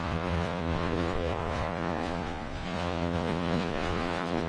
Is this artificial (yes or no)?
yes